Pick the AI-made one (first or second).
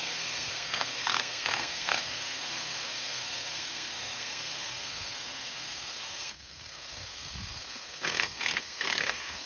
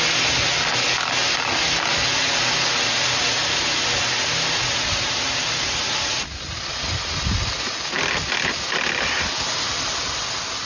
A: first